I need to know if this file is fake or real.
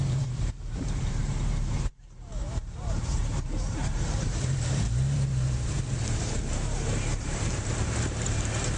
fake